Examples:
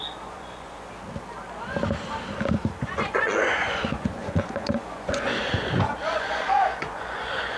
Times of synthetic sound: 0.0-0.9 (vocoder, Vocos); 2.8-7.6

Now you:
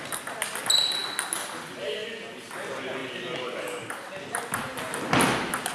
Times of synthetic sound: none

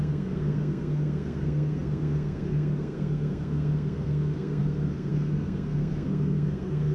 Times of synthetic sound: 0.0-6.9 (codec, SNAC)

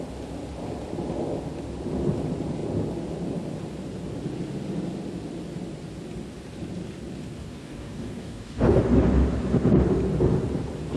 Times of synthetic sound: 7.4-8.8 (codec, DAC)

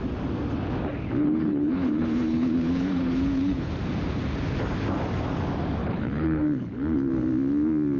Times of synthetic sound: 1.2-3.7 (codec, HILCodec); 5.8-7.1

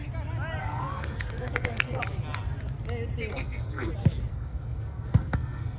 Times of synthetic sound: 0.6-2.0 (codec, SNAC); 3.3-3.9; 4.3-5.8

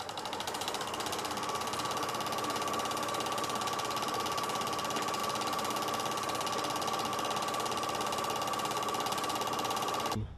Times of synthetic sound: none

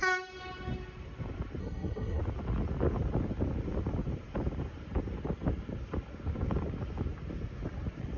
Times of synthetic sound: 1.6-2.2 (codec, SNAC)